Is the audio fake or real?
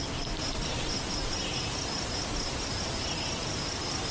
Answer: real